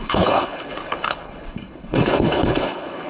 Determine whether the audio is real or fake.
fake